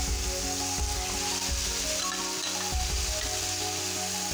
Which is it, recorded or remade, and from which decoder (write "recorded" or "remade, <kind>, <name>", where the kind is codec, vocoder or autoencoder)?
recorded